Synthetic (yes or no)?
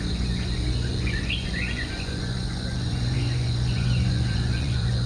yes